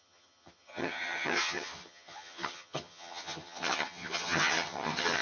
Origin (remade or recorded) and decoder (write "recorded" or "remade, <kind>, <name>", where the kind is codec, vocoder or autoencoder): remade, vocoder, HiFi-GAN